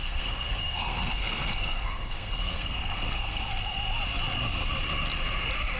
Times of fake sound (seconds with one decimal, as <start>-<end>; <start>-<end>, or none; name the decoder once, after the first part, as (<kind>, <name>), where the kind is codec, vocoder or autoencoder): 0.0-3.5 (codec, SNAC)